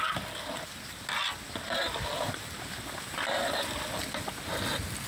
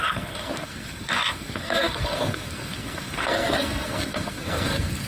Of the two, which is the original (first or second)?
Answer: first